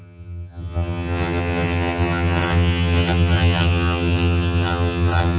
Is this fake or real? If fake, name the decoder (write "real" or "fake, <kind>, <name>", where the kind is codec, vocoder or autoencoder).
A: fake, vocoder, HiFi-GAN